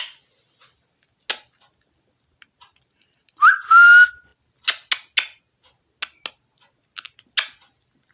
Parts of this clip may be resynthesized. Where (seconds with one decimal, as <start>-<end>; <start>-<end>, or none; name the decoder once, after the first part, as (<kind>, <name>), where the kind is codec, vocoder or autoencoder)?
none